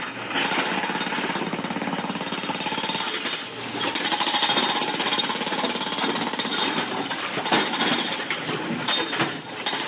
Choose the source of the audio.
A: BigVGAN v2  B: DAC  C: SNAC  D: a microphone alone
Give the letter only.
D